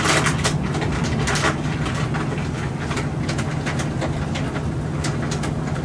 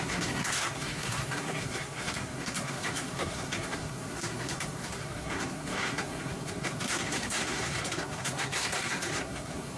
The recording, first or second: first